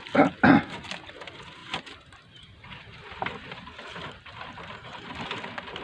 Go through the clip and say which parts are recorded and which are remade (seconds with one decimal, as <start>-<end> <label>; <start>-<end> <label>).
0.0-1.6 recorded; 1.6-5.1 remade; 5.1-5.8 recorded

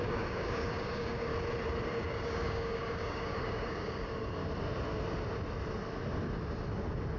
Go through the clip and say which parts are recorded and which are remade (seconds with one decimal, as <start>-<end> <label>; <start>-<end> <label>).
0.0-1.3 remade; 1.3-1.9 recorded; 1.9-4.4 remade; 4.4-7.2 recorded

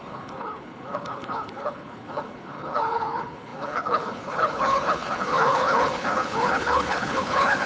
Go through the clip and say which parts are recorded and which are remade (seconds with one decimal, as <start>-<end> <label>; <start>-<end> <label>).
0.0-7.7 remade

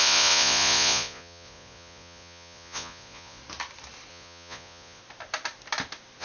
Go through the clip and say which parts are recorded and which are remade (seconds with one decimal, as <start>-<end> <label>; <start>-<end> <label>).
0.0-3.4 remade; 3.4-4.1 recorded; 4.1-5.0 remade; 5.0-6.2 recorded

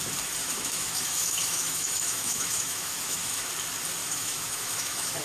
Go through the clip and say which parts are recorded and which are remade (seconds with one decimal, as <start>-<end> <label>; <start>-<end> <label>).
0.0-0.4 recorded; 0.4-3.5 remade; 3.5-4.0 recorded; 4.0-5.2 remade

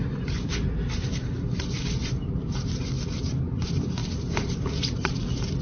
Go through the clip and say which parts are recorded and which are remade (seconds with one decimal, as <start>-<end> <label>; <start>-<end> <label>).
0.0-2.0 recorded; 2.0-3.0 remade; 3.0-4.0 recorded; 4.0-5.6 remade

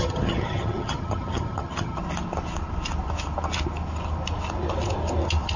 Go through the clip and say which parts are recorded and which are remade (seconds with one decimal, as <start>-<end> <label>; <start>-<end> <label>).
0.0-2.0 remade; 2.0-5.6 recorded